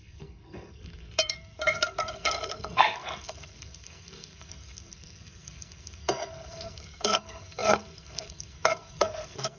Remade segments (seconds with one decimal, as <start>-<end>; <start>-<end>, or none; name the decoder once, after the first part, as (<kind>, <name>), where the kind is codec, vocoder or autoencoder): 0.0-9.6 (codec, SNAC)